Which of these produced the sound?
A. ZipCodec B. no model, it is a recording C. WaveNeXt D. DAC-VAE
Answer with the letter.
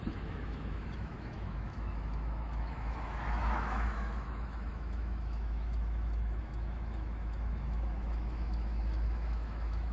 D